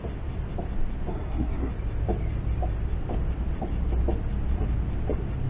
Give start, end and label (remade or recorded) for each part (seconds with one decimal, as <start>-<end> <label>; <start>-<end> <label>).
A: 0.0-1.1 recorded; 1.1-1.7 remade; 1.7-5.5 recorded